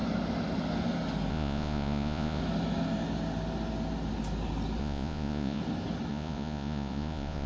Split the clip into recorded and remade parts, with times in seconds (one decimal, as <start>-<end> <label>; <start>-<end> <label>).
0.0-1.3 recorded; 1.3-2.4 remade; 2.4-4.8 recorded; 4.8-5.6 remade; 5.6-6.1 recorded; 6.1-7.5 remade